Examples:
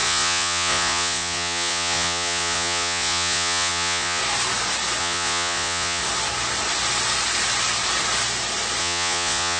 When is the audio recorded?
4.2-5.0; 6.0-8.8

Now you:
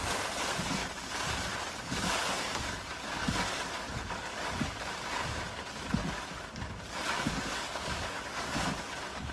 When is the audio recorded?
0.8-1.8

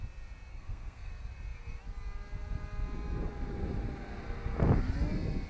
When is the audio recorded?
0.0-0.5; 1.1-5.5

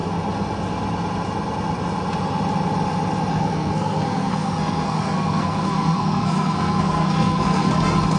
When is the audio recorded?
0.0-3.3; 7.7-8.2